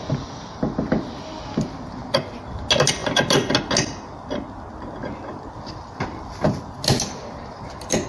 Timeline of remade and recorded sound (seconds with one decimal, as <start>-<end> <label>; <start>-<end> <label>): 0.0-0.6 remade; 0.6-5.0 recorded; 5.0-6.7 remade; 6.7-8.1 recorded